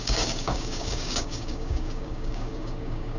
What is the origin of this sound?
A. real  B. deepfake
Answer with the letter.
B